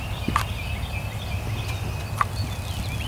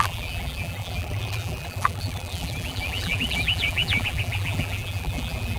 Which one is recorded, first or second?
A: first